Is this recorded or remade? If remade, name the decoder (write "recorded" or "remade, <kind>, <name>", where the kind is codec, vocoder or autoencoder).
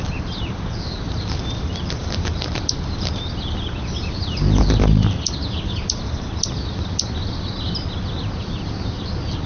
recorded